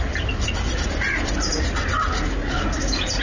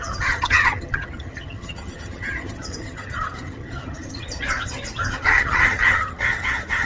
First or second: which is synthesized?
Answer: second